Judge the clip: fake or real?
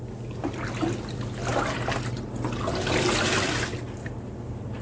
real